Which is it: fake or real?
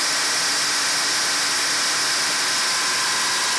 real